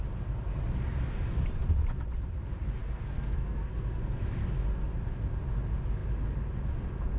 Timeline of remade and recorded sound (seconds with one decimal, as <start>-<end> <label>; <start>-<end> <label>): 0.0-2.8 recorded; 2.8-4.2 remade; 4.2-7.2 recorded